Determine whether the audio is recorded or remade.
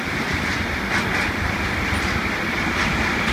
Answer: remade